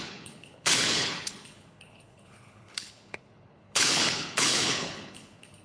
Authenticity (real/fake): fake